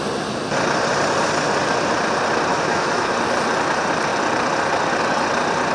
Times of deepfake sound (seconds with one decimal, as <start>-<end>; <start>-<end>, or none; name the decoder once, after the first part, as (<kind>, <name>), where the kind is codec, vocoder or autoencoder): 2.5-3.1 (autoencoder, DAC-VAE)